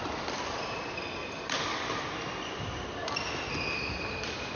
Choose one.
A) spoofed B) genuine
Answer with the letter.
B